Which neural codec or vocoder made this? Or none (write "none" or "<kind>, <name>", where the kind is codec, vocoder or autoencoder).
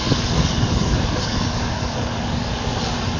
codec, DAC